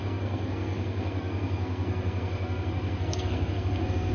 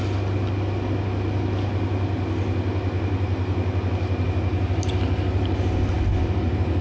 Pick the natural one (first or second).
second